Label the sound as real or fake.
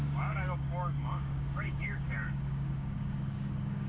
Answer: fake